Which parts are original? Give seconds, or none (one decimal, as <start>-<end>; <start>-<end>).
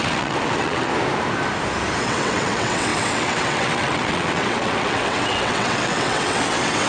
0.9-2.0